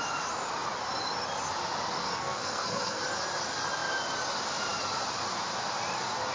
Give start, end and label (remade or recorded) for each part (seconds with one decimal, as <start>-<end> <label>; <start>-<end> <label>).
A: 0.0-2.0 recorded; 2.0-3.0 remade; 3.0-6.3 recorded

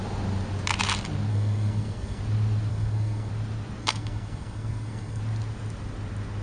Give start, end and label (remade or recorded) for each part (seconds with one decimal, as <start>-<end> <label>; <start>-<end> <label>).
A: 0.0-1.3 recorded; 1.3-2.2 remade; 2.2-2.7 recorded; 2.7-3.3 remade; 3.3-3.8 recorded; 3.8-5.2 remade; 5.2-6.4 recorded

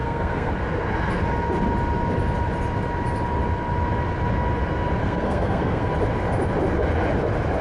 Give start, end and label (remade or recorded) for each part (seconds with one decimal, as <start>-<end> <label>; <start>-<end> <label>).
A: 0.0-0.5 remade; 0.5-5.0 recorded; 5.0-5.9 remade; 5.9-7.6 recorded

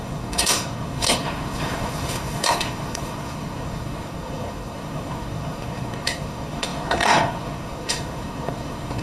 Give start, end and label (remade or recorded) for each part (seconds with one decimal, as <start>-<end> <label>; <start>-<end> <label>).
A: 0.0-9.0 remade

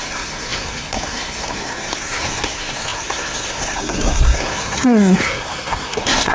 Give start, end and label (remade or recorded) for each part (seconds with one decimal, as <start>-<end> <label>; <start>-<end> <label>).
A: 0.0-6.3 remade

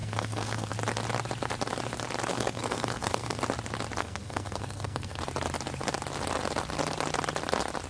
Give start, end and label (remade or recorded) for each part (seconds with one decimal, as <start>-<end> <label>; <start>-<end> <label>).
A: 0.0-0.7 remade; 0.7-2.3 recorded; 2.3-3.4 remade; 3.4-4.0 recorded; 4.0-5.2 remade; 5.2-7.9 recorded